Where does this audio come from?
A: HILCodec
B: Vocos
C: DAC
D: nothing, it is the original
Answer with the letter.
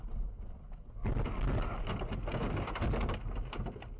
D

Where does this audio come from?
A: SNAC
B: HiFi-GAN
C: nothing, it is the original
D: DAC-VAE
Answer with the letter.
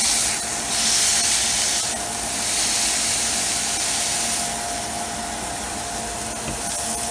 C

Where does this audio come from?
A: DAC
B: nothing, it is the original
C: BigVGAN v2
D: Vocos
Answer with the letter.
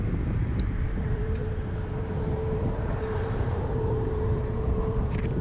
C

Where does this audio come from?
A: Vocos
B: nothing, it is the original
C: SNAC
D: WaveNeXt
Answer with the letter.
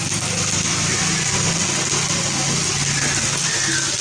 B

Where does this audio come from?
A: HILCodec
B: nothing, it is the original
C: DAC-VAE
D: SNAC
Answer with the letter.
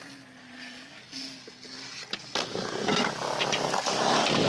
B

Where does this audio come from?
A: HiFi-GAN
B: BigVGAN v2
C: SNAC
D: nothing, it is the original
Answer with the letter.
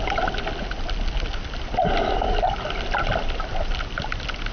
D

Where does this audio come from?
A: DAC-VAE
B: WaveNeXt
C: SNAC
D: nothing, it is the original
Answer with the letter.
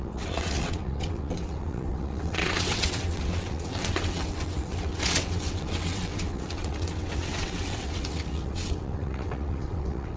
B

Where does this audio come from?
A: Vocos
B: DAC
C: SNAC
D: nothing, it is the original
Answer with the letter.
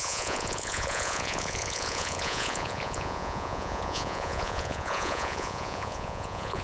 A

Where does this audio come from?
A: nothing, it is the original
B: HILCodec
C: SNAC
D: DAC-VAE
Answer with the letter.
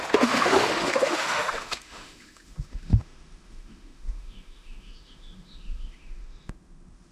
D